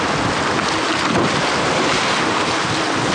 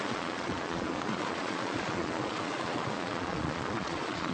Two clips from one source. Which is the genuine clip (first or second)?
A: first